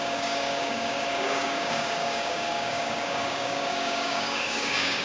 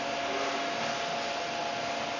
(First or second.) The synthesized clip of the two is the first